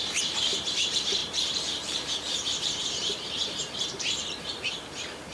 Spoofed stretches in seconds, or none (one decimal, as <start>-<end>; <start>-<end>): 0.0-5.3